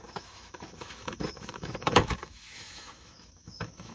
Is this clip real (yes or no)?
no